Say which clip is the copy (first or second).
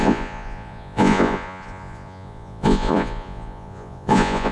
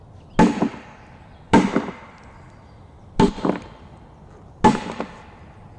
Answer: first